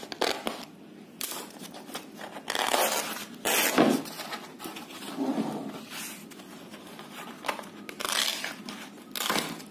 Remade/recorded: recorded